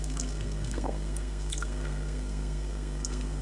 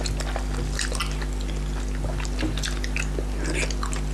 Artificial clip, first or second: first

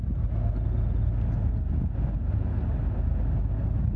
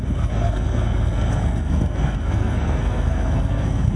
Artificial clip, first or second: second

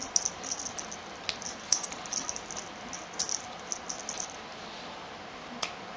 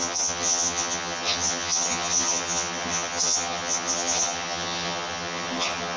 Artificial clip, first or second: second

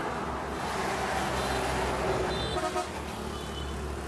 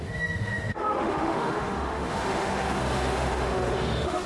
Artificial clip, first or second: second